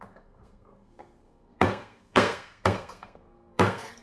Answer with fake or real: fake